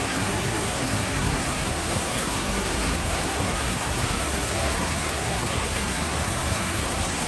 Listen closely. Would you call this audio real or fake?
fake